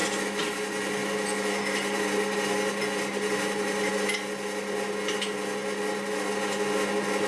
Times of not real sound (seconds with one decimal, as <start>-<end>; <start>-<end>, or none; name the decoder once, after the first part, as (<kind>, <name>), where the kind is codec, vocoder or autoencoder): none